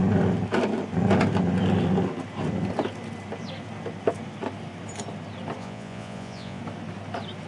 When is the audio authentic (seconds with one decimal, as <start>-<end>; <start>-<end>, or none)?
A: 0.0-5.6; 6.6-7.5